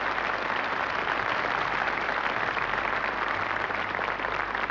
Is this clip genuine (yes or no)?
no